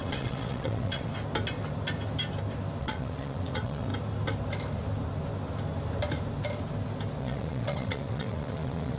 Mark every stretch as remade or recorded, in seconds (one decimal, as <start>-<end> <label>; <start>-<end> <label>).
0.0-1.1 remade; 1.1-2.8 recorded; 2.8-3.9 remade; 3.9-7.2 recorded; 7.2-9.0 remade